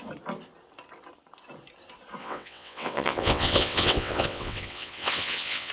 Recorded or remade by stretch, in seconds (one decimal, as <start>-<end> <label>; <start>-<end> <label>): 0.0-2.2 recorded; 2.2-5.7 remade